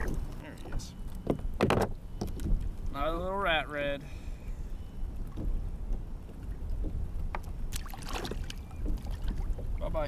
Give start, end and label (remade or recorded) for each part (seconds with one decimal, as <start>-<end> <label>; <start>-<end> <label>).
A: 0.0-2.6 recorded; 2.6-3.2 remade; 3.2-10.1 recorded